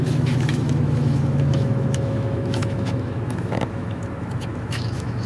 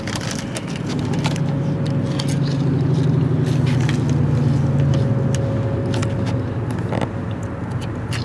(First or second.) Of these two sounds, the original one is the second